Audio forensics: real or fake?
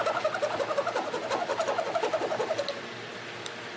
real